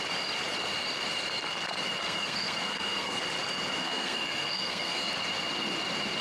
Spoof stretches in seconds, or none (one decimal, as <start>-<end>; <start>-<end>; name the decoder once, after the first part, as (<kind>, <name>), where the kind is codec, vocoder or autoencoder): 2.0-3.2 (codec, SNAC); 3.8-5.1